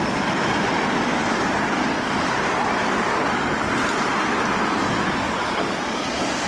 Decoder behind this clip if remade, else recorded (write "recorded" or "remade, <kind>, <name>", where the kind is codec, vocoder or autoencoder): recorded